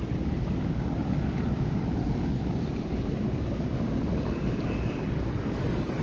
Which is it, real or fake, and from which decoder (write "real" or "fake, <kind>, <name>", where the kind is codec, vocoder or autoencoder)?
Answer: fake, codec, DAC